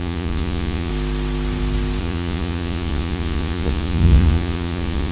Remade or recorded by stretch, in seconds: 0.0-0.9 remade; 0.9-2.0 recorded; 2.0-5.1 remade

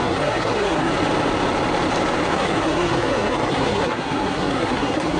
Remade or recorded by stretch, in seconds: 0.0-0.9 remade; 0.9-2.3 recorded; 2.3-5.2 remade

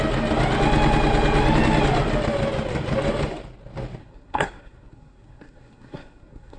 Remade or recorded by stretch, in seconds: 0.0-4.0 recorded; 4.0-6.6 remade

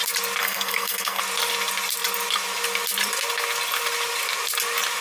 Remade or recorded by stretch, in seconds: 0.0-0.4 recorded; 0.4-1.2 remade; 1.2-5.0 recorded

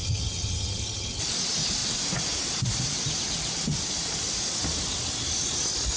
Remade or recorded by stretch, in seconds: 0.0-1.2 remade; 1.2-6.0 recorded

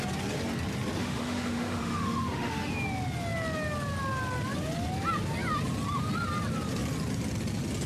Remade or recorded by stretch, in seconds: 0.0-1.0 recorded; 1.0-2.7 remade; 2.7-7.9 recorded